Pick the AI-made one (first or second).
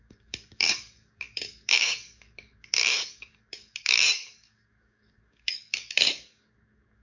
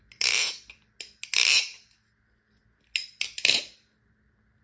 first